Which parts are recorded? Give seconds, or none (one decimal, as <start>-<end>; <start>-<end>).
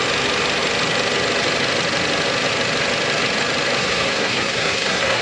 0.0-3.8